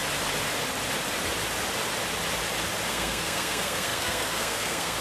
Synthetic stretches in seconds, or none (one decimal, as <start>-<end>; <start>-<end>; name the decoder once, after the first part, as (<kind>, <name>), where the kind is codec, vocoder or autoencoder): 2.9-5.0 (codec, SNAC)